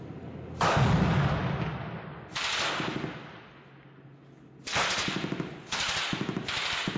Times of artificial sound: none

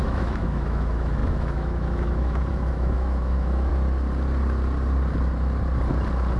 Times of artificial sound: 0.0-3.7 (autoencoder, DAC-VAE)

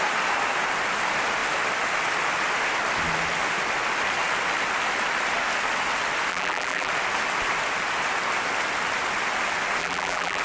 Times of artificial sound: 6.3-6.9 (vocoder, BigVGAN v2); 9.8-10.4

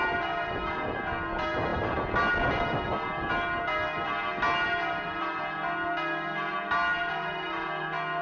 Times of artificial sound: none

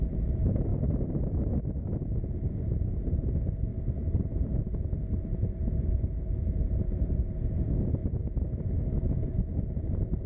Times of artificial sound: 8.0-9.5 (autoencoder, DAC-VAE)

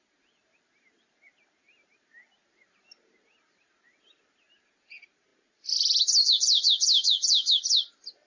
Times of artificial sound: 0.0-8.3 (vocoder, BigVGAN v2)

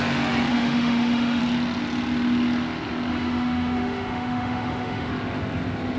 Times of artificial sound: 0.5-1.4 (autoencoder, DAC-VAE); 3.1-5.1